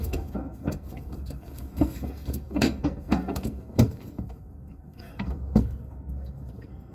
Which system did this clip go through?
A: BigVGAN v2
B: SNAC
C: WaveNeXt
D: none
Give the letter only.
B